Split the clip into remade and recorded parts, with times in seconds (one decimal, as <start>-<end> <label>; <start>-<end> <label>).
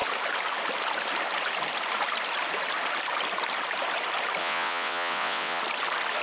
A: 0.0-4.4 recorded; 4.4-5.6 remade; 5.6-6.2 recorded